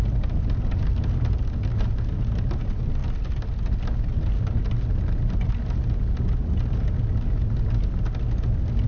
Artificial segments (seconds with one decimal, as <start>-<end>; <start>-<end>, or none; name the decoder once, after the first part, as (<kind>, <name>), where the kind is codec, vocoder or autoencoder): none